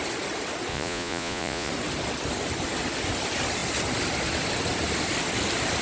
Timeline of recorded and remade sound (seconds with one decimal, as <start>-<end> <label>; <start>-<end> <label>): 0.0-0.7 recorded; 0.7-1.7 remade; 1.7-5.8 recorded